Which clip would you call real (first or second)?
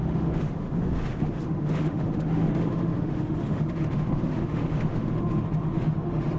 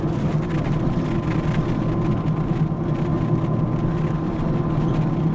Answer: second